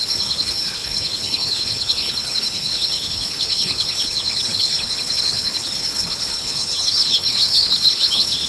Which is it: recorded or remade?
remade